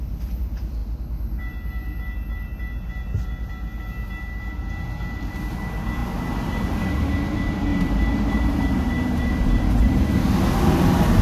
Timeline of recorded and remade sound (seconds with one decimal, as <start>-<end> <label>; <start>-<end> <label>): 0.0-7.7 recorded; 7.7-9.8 remade; 9.8-11.2 recorded